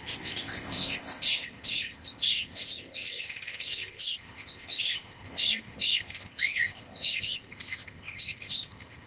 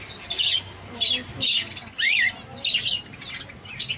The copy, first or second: first